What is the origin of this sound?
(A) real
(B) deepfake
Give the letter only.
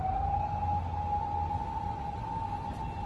A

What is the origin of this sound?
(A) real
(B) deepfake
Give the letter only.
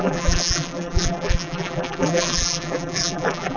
B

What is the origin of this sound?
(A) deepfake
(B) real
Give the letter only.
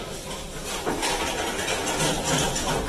B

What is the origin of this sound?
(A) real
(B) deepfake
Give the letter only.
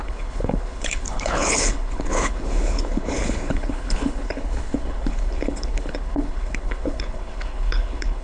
B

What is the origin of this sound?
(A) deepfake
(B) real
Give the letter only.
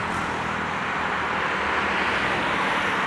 B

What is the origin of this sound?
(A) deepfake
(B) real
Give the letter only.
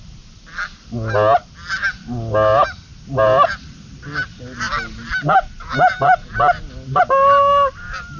B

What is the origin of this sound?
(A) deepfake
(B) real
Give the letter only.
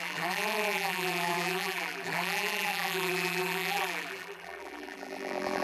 A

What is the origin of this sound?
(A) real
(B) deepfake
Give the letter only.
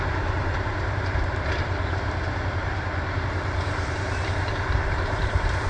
B